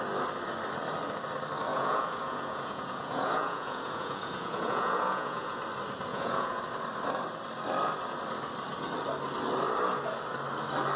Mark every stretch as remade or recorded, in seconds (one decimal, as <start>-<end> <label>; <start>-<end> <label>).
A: 0.0-1.7 recorded; 1.7-5.6 remade; 5.6-6.1 recorded; 6.1-6.6 remade; 6.6-11.0 recorded